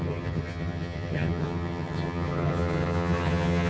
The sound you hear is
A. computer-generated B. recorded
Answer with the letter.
A